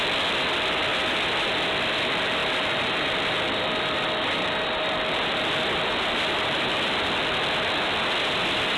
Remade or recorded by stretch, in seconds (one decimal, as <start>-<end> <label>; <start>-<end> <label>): 0.0-0.9 recorded; 0.9-1.5 remade; 1.5-2.4 recorded; 2.4-7.2 remade; 7.2-8.8 recorded